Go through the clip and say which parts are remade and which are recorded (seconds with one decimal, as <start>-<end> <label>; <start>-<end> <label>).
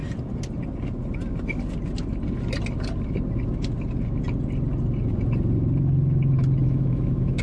0.0-6.6 recorded; 6.6-7.4 remade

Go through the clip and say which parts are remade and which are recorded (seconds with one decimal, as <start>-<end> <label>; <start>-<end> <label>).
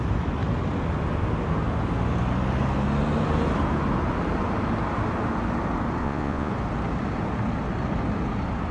0.0-6.0 recorded; 6.0-6.5 remade; 6.5-8.7 recorded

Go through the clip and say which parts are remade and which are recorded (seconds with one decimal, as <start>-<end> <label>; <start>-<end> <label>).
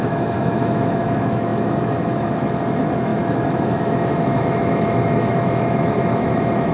0.0-6.7 remade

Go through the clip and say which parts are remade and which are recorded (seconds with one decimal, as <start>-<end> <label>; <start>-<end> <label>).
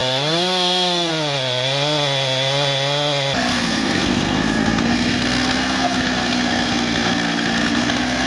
0.0-1.1 remade; 1.1-3.5 recorded; 3.5-8.3 remade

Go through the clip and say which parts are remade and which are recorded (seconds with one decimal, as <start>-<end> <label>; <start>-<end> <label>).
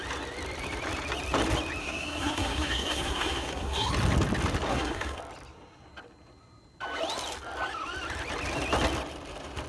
0.0-1.8 recorded; 1.8-3.9 remade; 3.9-4.7 recorded; 4.7-5.2 remade; 5.2-9.7 recorded